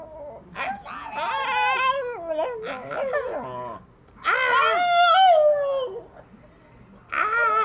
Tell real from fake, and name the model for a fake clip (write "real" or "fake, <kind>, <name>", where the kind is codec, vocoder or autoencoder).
real